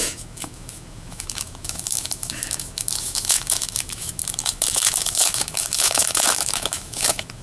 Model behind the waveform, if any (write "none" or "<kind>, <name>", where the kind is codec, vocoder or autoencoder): autoencoder, DAC-VAE